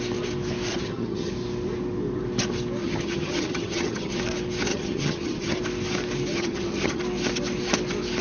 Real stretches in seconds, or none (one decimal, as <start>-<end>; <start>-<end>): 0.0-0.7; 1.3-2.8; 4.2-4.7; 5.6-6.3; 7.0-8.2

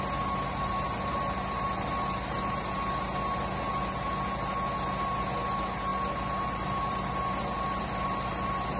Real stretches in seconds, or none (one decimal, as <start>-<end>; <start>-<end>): 0.0-8.8

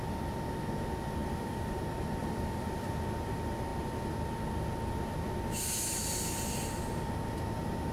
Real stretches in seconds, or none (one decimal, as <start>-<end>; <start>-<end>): 0.0-1.2; 1.8-2.2; 3.0-7.9